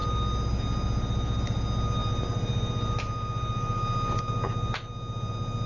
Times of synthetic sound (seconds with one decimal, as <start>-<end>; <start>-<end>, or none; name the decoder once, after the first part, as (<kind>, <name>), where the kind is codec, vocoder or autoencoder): none